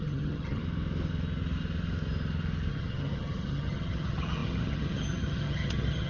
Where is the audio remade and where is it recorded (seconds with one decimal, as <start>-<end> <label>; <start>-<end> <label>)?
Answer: 0.0-0.6 remade; 0.6-2.7 recorded; 2.7-6.1 remade